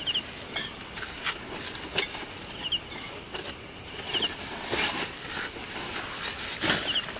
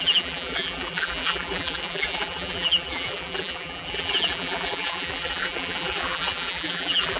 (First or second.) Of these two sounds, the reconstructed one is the second